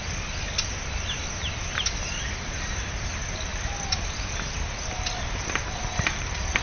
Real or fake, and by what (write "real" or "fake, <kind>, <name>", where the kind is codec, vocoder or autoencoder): real